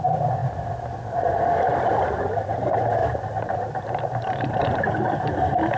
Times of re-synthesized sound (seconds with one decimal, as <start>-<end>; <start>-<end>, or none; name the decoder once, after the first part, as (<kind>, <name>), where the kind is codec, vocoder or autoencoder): 3.0-4.8 (vocoder, BigVGAN v2)